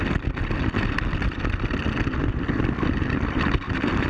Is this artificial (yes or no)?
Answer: no